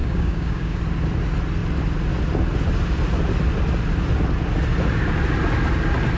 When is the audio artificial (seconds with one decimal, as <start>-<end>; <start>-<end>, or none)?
0.0-0.8